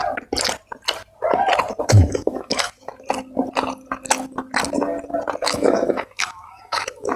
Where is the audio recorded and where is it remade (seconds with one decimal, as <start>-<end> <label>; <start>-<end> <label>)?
0.0-1.8 recorded; 1.8-2.9 remade; 2.9-5.4 recorded; 5.4-7.2 remade